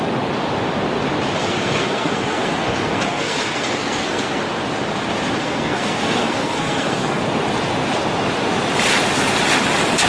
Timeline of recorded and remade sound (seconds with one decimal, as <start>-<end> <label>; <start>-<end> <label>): 0.0-1.4 recorded; 1.4-4.4 remade; 4.4-5.4 recorded; 5.4-7.2 remade; 7.2-10.1 recorded